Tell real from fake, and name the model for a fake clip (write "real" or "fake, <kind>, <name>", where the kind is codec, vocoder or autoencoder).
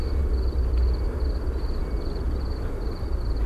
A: real